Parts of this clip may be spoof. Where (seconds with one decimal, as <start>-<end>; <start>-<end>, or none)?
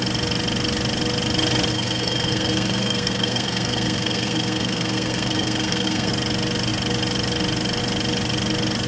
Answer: 1.7-6.1